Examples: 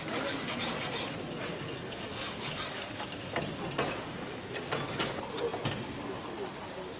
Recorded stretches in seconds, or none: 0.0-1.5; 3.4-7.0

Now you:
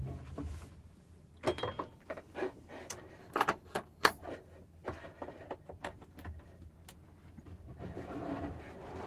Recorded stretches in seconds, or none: 0.0-3.2; 4.2-9.1

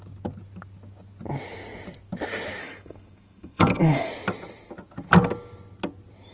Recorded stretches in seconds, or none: 0.0-2.6; 4.1-6.3

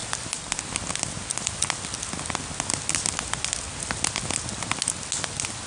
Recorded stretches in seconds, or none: 0.0-5.7

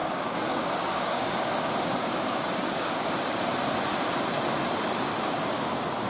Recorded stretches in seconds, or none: 3.1-5.1

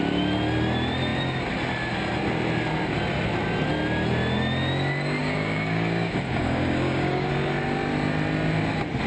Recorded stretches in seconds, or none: 0.0-5.2; 7.3-9.1